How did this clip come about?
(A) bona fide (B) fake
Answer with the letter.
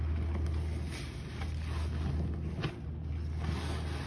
A